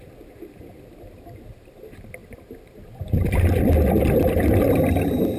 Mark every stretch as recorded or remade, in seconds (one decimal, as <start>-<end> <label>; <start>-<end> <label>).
0.0-5.4 recorded